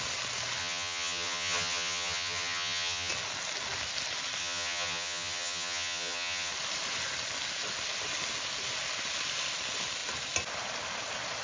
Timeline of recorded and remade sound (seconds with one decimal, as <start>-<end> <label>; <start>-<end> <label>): 0.0-0.6 recorded; 0.6-3.1 remade; 3.1-4.4 recorded; 4.4-6.5 remade; 6.5-11.4 recorded